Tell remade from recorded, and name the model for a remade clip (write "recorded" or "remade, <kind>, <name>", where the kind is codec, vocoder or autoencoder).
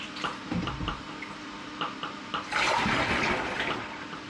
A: recorded